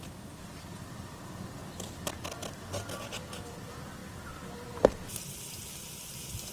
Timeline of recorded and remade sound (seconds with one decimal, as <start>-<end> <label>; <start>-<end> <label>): 0.0-6.5 recorded